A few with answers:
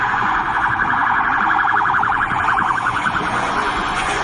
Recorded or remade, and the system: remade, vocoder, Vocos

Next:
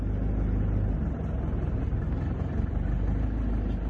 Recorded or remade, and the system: recorded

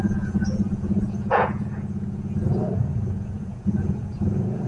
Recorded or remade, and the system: remade, vocoder, Vocos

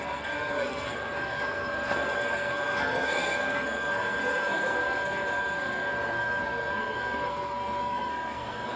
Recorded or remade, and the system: remade, codec, SNAC